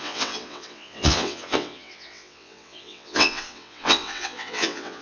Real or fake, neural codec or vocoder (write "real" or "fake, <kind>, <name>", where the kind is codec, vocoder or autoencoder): fake, vocoder, WaveNeXt